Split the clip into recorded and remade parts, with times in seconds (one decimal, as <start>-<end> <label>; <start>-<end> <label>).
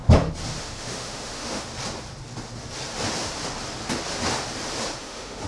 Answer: 0.0-0.6 recorded; 0.6-1.7 remade; 1.7-5.0 recorded; 5.0-5.5 remade